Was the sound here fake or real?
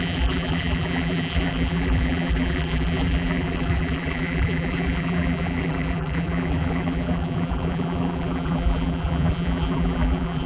fake